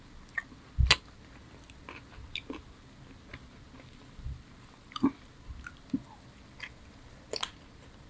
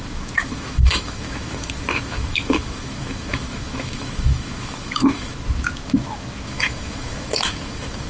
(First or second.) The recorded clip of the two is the first